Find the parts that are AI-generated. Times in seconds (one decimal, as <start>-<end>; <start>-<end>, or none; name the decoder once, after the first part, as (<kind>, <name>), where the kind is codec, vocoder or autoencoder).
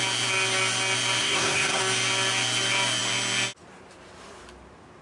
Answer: 1.2-1.8 (codec, SNAC)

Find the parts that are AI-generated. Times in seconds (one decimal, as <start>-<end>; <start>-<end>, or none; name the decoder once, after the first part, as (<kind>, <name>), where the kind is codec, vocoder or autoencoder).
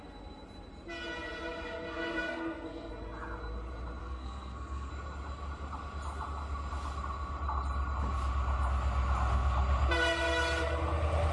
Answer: 2.1-2.9 (codec, SNAC); 4.0-4.9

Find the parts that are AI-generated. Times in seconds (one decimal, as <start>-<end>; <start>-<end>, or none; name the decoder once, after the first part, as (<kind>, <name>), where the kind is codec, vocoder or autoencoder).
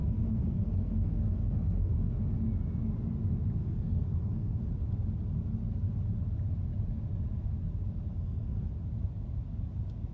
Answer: 0.0-2.1 (codec, SNAC); 3.6-4.6; 8.1-8.7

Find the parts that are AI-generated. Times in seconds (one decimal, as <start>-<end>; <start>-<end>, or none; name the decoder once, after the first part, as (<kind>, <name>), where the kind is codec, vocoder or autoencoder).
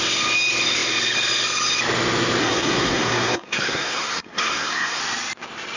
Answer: 2.4-5.0 (codec, SNAC)